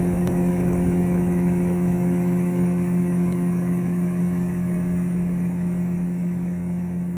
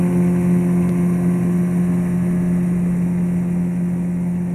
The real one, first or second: second